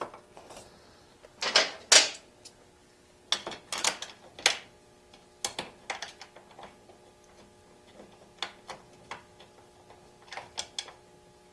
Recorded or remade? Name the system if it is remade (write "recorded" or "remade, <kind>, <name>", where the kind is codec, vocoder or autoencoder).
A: recorded